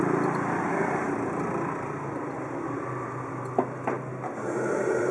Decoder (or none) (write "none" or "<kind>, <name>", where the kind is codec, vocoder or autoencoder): none